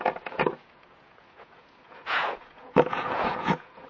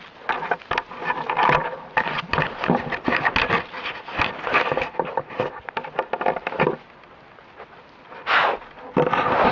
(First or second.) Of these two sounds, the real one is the second